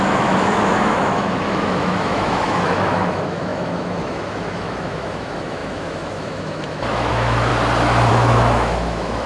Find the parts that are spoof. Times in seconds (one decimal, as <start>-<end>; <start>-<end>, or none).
0.0-7.5; 8.1-9.3